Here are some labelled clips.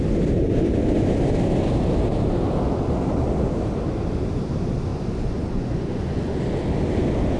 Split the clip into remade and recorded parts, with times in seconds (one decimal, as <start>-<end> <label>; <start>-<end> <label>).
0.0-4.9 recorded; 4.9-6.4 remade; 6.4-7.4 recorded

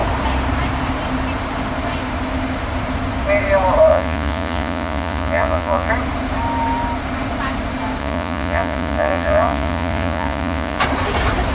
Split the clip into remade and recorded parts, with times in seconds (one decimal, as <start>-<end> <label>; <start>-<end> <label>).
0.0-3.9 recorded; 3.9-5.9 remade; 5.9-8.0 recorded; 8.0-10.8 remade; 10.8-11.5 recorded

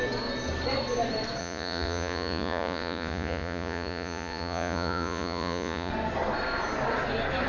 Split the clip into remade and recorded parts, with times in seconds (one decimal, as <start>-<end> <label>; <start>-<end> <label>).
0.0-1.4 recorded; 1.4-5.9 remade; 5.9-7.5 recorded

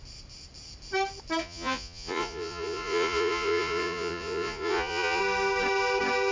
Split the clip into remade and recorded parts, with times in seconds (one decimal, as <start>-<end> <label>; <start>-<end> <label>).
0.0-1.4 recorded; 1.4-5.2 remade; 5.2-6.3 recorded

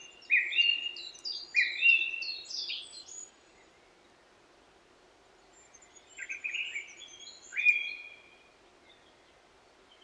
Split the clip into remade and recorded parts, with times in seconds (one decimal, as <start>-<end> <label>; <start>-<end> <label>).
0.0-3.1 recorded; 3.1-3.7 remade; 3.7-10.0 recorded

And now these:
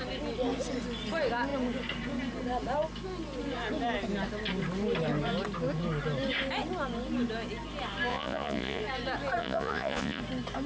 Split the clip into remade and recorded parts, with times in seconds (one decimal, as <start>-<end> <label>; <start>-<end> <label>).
0.0-8.1 recorded; 8.1-8.8 remade; 8.8-9.4 recorded; 9.4-10.2 remade; 10.2-10.7 recorded

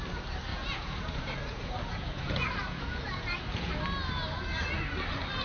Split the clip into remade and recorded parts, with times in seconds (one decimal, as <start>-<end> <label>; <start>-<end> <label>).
0.0-0.5 recorded; 0.5-3.7 remade; 3.7-5.4 recorded

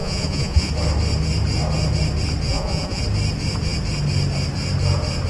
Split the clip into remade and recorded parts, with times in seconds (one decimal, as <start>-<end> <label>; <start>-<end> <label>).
0.0-0.7 remade; 0.7-2.5 recorded; 2.5-3.0 remade; 3.0-5.3 recorded